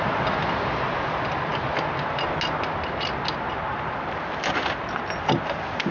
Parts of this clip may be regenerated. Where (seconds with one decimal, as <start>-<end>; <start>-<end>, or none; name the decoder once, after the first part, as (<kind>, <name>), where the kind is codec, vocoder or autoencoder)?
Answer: none